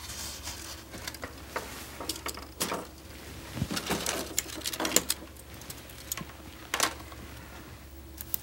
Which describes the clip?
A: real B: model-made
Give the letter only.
A